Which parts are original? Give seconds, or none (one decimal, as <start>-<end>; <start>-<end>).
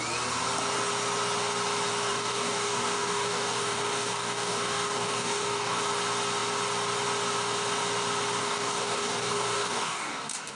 0.0-2.1; 5.8-8.4